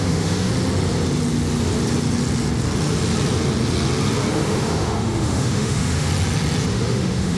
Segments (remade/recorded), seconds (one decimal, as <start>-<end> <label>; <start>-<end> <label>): 0.0-0.5 remade; 0.5-4.3 recorded; 4.3-6.1 remade; 6.1-6.7 recorded; 6.7-7.4 remade